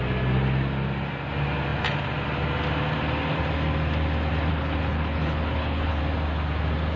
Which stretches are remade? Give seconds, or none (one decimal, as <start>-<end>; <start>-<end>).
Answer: 4.5-6.0